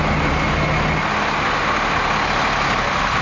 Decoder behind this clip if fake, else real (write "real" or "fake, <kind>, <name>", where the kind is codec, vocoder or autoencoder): real